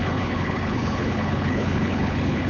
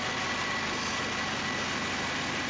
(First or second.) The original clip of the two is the second